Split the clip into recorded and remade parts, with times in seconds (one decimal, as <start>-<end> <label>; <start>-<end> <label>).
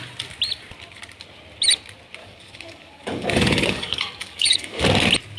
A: 0.0-2.2 recorded; 2.2-4.8 remade; 4.8-5.4 recorded